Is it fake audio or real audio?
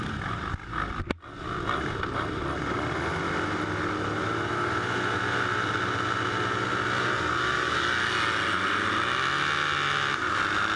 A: real